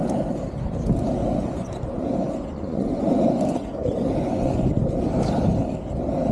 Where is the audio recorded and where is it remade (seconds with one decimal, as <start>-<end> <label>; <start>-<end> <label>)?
0.0-1.2 recorded; 1.2-4.7 remade; 4.7-6.3 recorded